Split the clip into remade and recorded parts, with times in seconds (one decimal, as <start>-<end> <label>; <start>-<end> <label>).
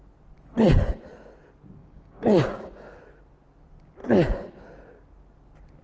0.0-1.8 recorded; 1.8-3.0 remade; 3.0-5.8 recorded